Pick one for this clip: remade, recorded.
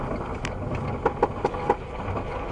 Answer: recorded